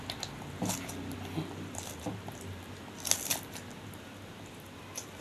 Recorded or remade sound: recorded